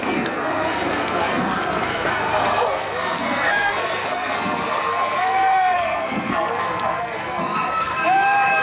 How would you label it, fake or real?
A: fake